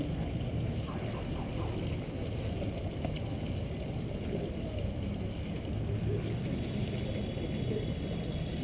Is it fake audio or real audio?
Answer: real